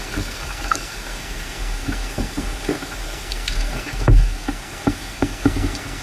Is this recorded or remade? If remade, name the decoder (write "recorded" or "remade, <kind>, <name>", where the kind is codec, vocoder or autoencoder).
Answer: remade, codec, SNAC